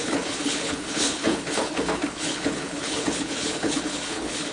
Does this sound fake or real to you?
fake